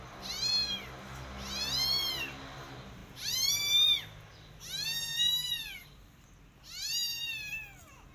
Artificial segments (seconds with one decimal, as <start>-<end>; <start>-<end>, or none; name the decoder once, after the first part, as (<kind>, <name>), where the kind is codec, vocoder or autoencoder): none